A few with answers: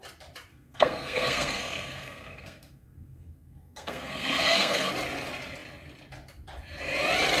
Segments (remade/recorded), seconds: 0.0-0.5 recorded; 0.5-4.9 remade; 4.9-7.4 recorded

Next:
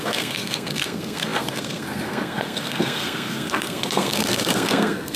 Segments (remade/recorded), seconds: 0.0-5.2 remade

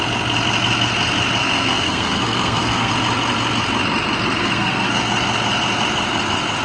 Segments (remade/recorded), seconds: 0.0-1.4 recorded; 1.4-2.9 remade; 2.9-4.4 recorded; 4.4-5.0 remade; 5.0-6.6 recorded

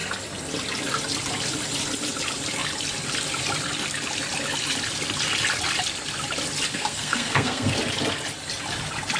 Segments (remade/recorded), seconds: 0.0-6.7 recorded; 6.7-7.8 remade; 7.8-9.2 recorded

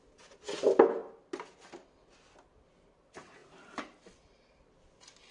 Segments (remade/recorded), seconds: 0.0-5.3 recorded

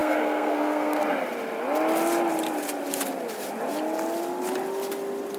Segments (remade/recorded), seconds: 0.0-1.0 remade; 1.0-5.4 recorded